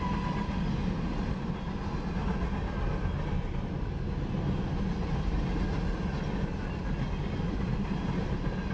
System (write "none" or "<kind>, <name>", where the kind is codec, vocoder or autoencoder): none